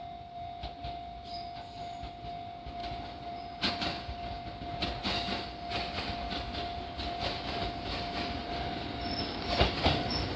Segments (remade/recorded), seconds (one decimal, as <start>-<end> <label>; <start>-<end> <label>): 0.0-10.4 recorded